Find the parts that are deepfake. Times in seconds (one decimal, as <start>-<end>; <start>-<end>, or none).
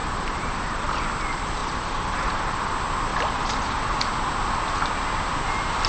0.0-1.0; 1.6-2.7; 3.1-4.0